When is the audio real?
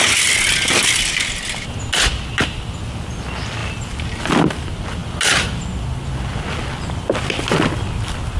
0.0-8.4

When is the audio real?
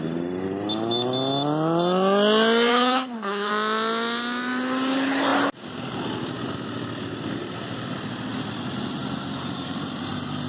0.0-2.7; 3.5-10.5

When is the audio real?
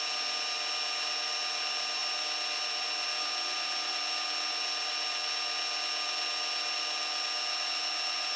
0.0-8.4